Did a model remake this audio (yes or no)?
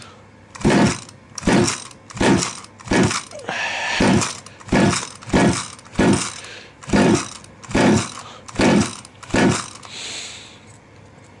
no